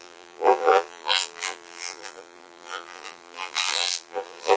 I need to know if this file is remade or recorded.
remade